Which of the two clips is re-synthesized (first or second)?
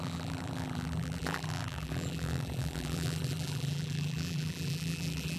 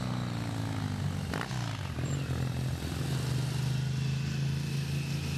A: first